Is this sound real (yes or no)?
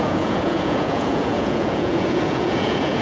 no